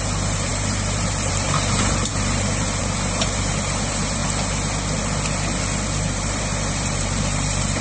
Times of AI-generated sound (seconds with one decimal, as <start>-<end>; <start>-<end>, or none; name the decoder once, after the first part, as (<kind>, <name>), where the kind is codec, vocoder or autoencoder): 0.0-4.2 (vocoder, BigVGAN v2); 6.0-7.8